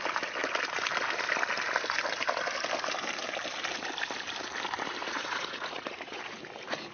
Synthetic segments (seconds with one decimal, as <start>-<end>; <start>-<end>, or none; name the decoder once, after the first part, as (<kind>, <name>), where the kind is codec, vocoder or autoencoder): 5.0-6.2 (vocoder, Vocos)